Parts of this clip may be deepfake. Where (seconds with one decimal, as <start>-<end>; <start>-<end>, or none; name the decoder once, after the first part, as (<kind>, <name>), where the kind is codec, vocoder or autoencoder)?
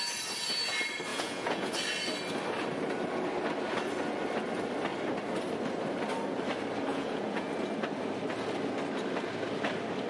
1.1-1.7 (vocoder, Vocos); 6.9-7.5